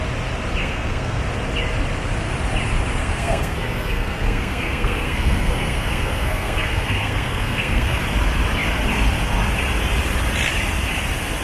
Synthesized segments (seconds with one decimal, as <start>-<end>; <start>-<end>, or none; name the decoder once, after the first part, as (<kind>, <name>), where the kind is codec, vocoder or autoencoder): 0.6-1.2 (codec, SNAC); 3.0-8.0

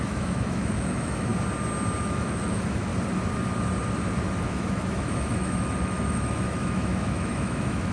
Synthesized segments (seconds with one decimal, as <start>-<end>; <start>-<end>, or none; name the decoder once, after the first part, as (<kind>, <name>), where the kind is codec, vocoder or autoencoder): 0.0-1.3 (autoencoder, DAC-VAE); 2.0-2.9; 4.4-7.9

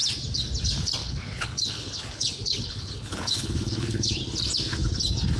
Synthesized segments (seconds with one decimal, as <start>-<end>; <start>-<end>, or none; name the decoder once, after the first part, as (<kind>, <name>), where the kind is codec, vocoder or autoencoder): 1.0-4.2 (codec, HILCodec)

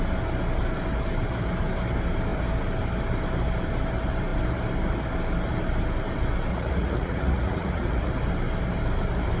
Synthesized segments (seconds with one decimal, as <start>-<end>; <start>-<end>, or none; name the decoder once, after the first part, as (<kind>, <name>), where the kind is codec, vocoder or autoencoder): 6.5-8.1 (vocoder, Vocos)

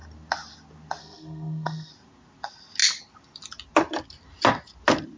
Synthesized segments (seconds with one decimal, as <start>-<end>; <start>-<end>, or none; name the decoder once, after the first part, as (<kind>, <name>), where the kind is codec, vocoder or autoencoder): 1.0-1.9 (codec, SNAC)

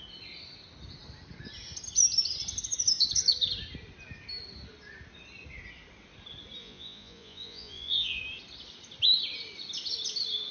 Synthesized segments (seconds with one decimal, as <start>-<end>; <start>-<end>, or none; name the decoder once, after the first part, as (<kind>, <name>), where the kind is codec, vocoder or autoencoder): 6.6-8.2 (vocoder, Vocos)

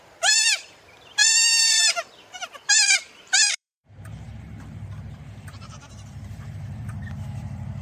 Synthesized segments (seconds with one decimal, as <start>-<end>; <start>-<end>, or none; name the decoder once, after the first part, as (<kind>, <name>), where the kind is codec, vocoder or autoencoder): 0.0-7.8 (vocoder, BigVGAN v2)

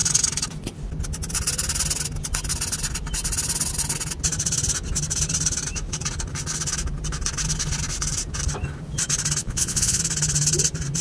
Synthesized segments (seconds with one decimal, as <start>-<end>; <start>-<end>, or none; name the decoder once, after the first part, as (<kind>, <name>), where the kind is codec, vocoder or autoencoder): 9.4-10.0 (vocoder, Vocos)